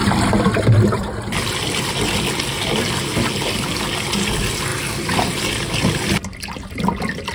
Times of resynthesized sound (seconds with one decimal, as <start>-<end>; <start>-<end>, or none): 0.0-1.3; 6.2-6.8